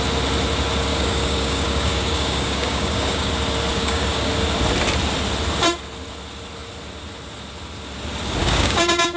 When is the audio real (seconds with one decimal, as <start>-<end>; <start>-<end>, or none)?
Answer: 0.0-0.9; 3.3-3.7; 4.3-8.4